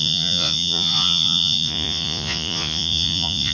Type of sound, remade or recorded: remade